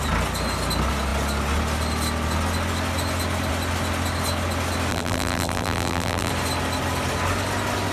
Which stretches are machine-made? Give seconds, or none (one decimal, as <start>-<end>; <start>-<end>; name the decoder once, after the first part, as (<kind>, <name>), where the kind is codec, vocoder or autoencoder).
4.9-6.3 (vocoder, BigVGAN v2)